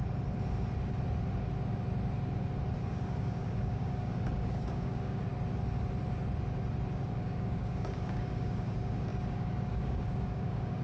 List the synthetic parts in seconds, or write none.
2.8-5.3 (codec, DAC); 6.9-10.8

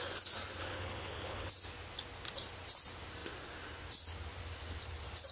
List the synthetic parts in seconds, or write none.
0.6-1.5 (codec, HILCodec)

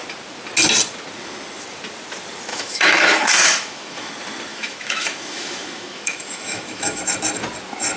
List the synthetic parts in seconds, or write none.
2.5-4.1 (autoencoder, DAC-VAE); 4.5-7.0